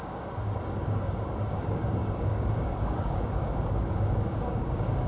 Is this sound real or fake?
fake